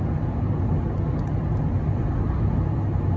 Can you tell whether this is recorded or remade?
recorded